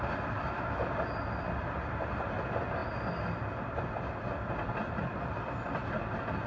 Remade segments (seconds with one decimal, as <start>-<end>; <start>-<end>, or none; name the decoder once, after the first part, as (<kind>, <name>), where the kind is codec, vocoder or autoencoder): none